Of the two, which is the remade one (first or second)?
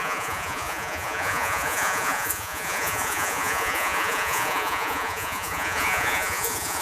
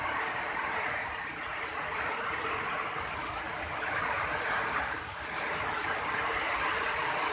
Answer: first